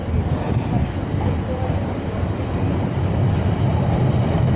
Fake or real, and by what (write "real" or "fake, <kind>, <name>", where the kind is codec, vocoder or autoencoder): real